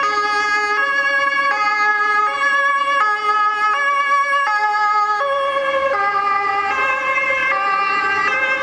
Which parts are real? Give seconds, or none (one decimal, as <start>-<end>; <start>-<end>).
0.0-8.6